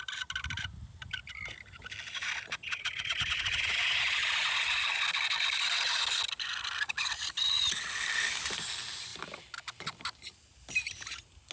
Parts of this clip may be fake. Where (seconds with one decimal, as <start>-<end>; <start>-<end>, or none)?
2.6-5.0